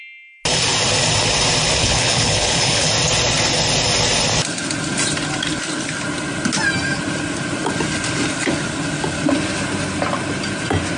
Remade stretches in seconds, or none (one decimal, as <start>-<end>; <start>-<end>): 1.8-2.9